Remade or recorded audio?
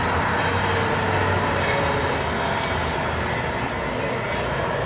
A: recorded